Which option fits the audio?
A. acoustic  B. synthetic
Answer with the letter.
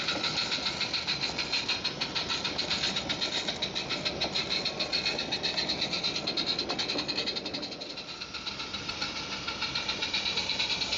A